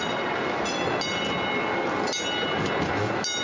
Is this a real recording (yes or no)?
yes